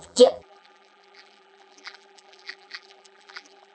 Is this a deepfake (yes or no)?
yes